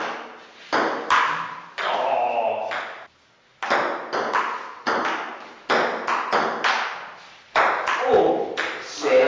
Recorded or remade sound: recorded